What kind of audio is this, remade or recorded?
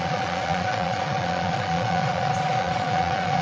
remade